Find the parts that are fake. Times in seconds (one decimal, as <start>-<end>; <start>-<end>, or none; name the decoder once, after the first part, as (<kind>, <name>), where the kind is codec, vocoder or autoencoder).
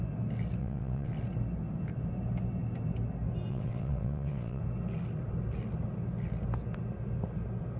0.6-1.1 (vocoder, WaveNeXt); 3.5-4.6